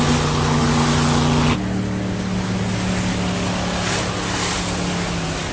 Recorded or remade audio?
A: recorded